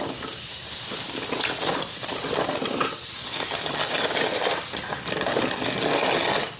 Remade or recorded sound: recorded